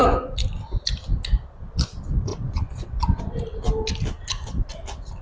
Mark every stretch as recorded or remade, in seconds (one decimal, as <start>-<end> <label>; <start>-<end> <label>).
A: 0.0-2.3 recorded; 2.3-3.2 remade; 3.2-5.2 recorded